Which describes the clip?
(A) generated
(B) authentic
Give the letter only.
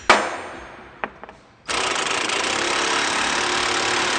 B